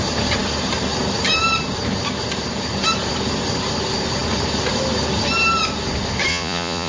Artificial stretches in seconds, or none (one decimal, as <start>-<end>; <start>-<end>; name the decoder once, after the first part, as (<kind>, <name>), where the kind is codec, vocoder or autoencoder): 6.3-6.9 (vocoder, Vocos)